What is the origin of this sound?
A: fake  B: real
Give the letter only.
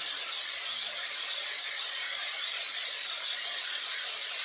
B